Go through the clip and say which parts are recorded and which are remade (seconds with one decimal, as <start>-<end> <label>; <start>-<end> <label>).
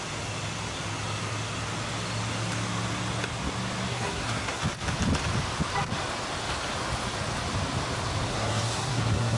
0.0-3.9 recorded; 3.9-4.6 remade; 4.6-8.3 recorded; 8.3-9.4 remade